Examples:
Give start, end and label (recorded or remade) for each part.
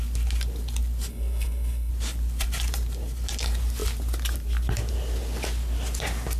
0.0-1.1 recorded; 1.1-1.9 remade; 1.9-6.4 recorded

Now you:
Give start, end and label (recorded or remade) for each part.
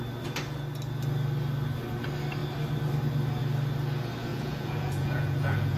0.0-4.3 recorded; 4.3-5.8 remade